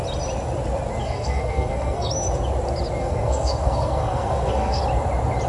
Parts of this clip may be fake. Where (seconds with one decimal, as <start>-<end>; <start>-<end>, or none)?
1.0-2.1; 3.0-4.8